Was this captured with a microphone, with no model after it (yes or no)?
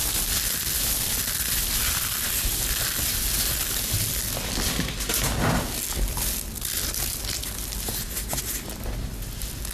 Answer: yes